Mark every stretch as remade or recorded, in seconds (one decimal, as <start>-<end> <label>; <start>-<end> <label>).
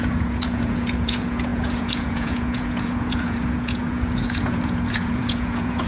0.0-5.9 remade